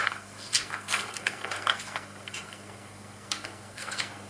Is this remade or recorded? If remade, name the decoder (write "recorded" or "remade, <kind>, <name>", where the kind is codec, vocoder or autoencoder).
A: remade, codec, SNAC